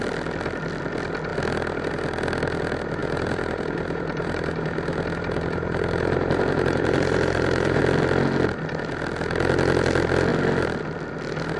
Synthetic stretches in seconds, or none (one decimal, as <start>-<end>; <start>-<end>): 3.0-7.8